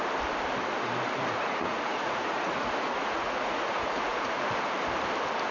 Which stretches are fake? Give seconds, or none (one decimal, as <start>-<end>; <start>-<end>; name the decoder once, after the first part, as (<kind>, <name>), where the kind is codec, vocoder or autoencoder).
1.2-4.5 (vocoder, Vocos)